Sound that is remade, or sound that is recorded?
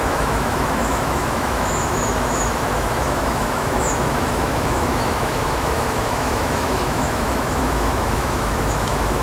remade